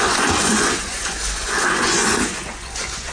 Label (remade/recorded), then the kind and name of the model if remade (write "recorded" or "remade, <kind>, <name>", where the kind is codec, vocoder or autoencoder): remade, vocoder, Vocos